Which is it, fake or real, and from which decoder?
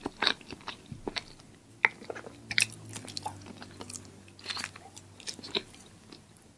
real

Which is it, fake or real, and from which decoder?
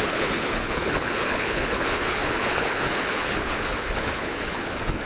fake, codec, HILCodec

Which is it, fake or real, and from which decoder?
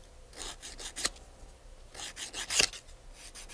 real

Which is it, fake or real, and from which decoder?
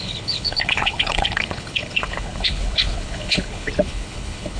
fake, codec, HILCodec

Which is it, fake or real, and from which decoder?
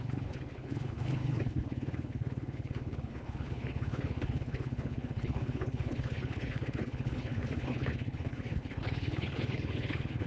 fake, codec, HILCodec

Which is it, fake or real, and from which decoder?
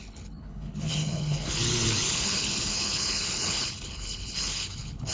fake, codec, HILCodec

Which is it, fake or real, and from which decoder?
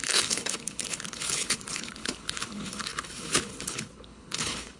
fake, codec, HILCodec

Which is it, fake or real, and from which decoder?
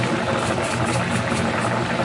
real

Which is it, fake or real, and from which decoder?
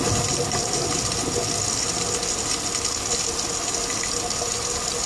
real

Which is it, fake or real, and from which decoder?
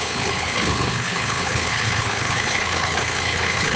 fake, codec, HILCodec